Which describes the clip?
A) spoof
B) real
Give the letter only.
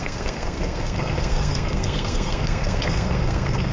A